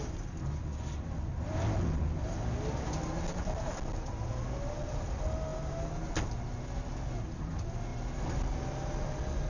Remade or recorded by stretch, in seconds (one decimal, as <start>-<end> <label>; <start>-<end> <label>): 0.0-7.9 recorded; 7.9-8.5 remade; 8.5-9.5 recorded